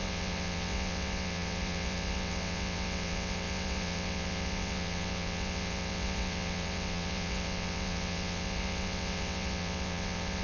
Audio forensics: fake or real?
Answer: fake